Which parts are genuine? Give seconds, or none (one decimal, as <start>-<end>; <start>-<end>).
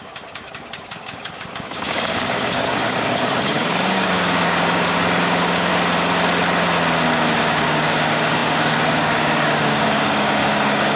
5.7-7.4